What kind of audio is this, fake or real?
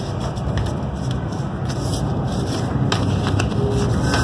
real